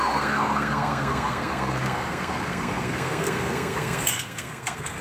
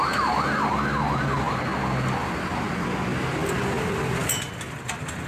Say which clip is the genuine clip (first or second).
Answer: second